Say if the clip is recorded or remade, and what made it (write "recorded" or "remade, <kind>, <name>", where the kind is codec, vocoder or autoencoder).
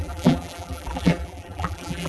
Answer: remade, vocoder, BigVGAN v2